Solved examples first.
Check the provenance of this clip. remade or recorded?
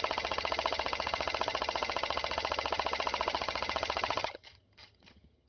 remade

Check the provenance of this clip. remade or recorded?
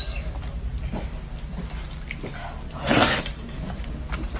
recorded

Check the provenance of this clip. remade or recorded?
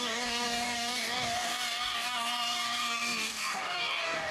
remade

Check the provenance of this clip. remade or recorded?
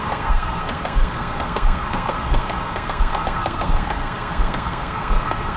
remade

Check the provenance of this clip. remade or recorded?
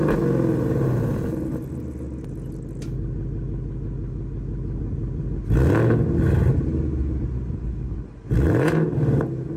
recorded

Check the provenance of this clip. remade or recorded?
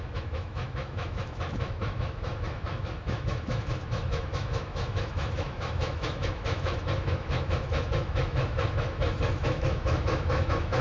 remade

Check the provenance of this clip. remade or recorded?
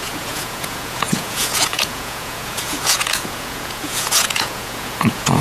remade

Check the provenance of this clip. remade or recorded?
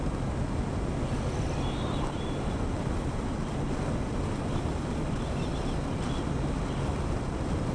recorded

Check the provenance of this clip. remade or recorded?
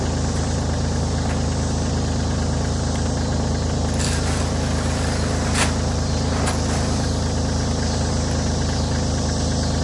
recorded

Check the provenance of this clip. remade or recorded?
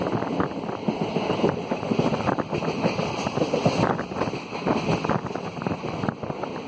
recorded